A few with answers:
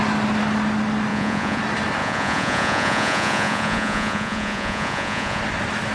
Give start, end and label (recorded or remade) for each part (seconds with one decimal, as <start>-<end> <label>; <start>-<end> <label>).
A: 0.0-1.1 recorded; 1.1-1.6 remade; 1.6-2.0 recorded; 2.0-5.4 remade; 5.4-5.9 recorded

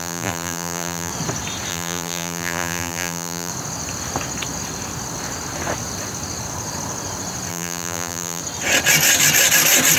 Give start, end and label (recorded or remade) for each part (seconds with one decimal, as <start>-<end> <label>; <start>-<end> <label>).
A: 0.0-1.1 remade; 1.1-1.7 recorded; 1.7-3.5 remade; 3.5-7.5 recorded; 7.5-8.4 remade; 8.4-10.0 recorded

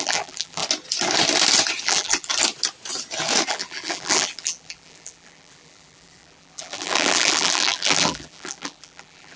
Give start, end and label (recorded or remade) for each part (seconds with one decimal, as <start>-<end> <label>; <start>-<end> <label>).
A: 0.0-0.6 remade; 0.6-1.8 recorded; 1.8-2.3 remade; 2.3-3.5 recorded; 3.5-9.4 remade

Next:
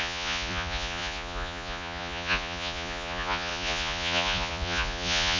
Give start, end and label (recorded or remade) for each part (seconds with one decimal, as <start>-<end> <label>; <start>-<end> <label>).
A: 0.0-5.4 remade

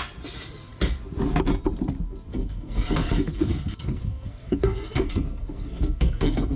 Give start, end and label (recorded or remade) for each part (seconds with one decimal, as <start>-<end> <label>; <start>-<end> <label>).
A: 0.0-2.3 recorded; 2.3-6.6 remade

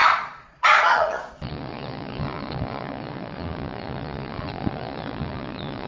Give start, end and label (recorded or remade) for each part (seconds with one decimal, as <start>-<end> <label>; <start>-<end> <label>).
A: 0.0-5.9 remade